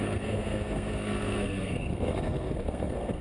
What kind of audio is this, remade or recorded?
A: remade